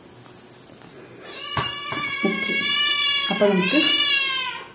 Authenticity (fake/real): real